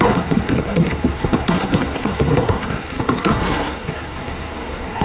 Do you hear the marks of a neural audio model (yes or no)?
yes